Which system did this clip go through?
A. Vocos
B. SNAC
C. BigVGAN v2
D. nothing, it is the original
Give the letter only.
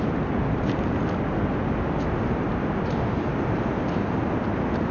D